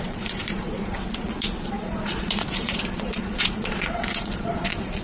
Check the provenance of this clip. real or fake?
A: fake